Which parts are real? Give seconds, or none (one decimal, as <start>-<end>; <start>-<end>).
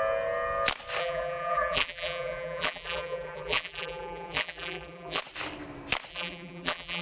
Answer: 0.0-1.0; 5.2-6.1